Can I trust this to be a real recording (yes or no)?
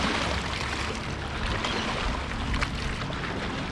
yes